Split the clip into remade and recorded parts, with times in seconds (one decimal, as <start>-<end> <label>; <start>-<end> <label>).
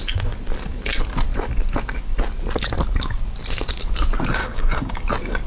0.0-4.4 recorded; 4.4-5.1 remade; 5.1-5.5 recorded